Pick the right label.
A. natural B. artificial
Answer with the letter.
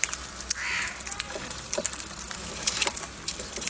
A